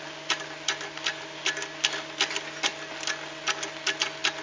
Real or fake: real